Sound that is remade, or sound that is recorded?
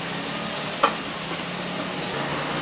recorded